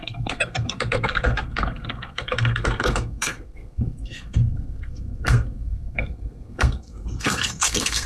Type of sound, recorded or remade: remade